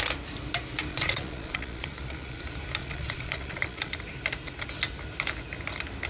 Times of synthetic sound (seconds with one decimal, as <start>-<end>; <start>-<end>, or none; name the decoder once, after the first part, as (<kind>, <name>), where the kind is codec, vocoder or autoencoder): 0.9-2.4 (vocoder, Vocos); 2.8-3.9

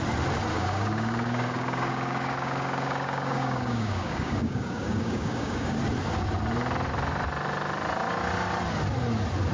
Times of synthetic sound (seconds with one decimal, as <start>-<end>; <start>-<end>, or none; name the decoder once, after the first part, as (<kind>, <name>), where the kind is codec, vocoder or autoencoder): 0.5-5.8 (codec, DAC)